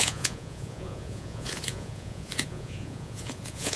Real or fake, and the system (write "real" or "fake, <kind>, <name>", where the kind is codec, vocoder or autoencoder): fake, vocoder, Vocos